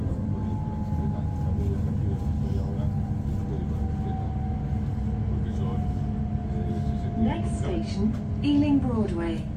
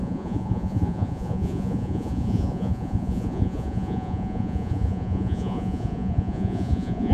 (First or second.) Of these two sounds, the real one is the first